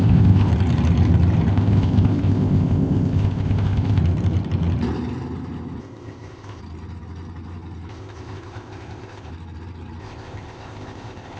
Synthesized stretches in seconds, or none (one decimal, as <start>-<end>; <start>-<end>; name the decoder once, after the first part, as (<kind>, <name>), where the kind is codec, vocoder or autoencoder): 0.0-0.5 (codec, ZipCodec); 1.5-4.0; 5.8-6.6; 7.9-9.3; 10.0-11.4